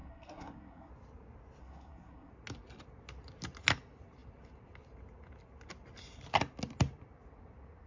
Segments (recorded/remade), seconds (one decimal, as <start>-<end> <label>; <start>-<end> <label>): 0.0-0.9 remade; 0.9-1.6 recorded; 1.6-2.3 remade; 2.3-7.9 recorded